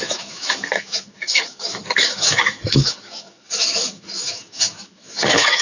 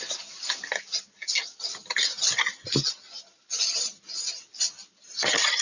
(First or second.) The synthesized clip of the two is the first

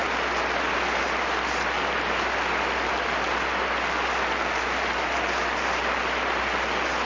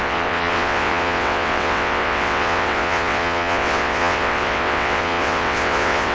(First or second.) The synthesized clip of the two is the second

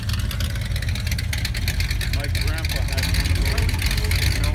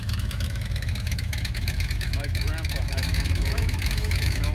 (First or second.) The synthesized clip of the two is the second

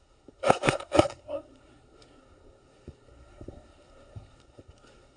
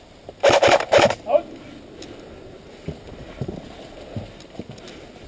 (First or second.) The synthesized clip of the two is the first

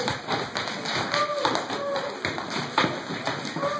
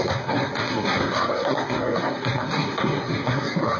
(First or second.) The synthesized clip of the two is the second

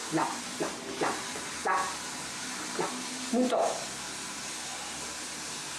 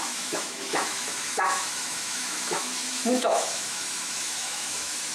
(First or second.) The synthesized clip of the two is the second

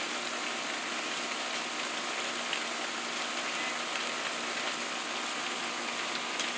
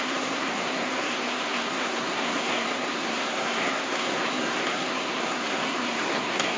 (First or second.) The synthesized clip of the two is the second